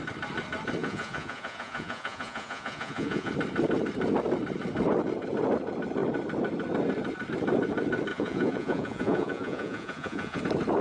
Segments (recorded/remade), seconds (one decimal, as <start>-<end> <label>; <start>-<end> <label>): 0.0-0.8 recorded; 0.8-3.3 remade; 3.3-8.1 recorded; 8.1-10.4 remade; 10.4-10.8 recorded